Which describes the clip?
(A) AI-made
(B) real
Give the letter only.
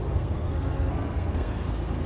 A